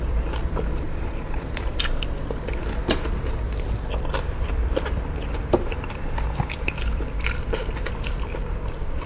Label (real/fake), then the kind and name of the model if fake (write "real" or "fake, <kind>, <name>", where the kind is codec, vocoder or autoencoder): fake, vocoder, BigVGAN v2